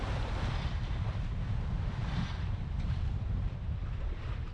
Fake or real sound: fake